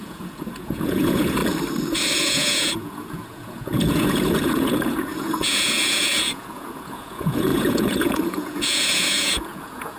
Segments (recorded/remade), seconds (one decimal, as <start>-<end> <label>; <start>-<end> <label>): 0.0-1.4 remade; 1.4-2.2 recorded; 2.2-10.0 remade